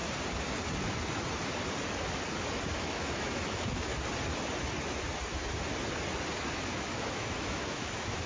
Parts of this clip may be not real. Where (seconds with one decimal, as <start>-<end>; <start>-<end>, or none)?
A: 2.7-3.9; 6.4-8.3